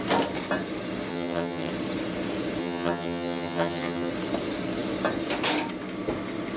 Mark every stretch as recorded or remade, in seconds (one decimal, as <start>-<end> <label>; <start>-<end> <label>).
0.0-1.1 recorded; 1.1-1.7 remade; 1.7-2.6 recorded; 2.6-4.1 remade; 4.1-6.6 recorded